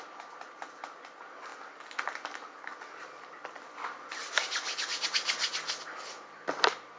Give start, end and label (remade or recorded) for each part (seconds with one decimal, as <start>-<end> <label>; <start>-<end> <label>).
0.0-7.0 recorded